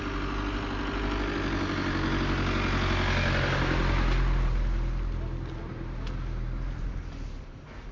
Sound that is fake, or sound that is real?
real